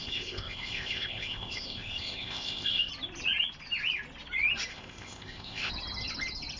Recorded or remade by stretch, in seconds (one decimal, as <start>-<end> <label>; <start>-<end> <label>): 0.0-2.9 remade; 2.9-4.7 recorded; 4.7-5.7 remade; 5.7-6.6 recorded